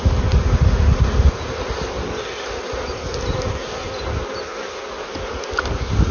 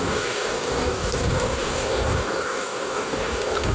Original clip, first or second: first